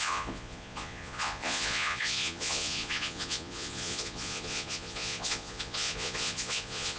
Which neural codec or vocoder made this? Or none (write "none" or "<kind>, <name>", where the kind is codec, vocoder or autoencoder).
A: vocoder, Vocos